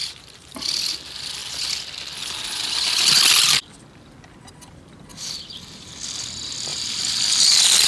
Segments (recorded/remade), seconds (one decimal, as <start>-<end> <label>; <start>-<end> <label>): 0.0-0.6 remade; 0.6-5.1 recorded; 5.1-5.9 remade; 5.9-6.7 recorded; 6.7-7.2 remade; 7.2-7.9 recorded